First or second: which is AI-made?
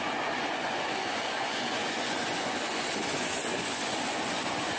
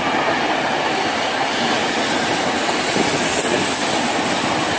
first